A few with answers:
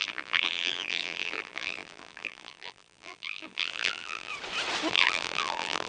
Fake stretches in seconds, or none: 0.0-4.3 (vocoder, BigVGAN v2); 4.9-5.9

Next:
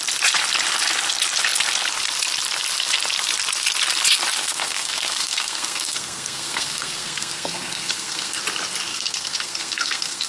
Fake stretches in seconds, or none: 4.4-8.4 (codec, SNAC); 8.9-10.3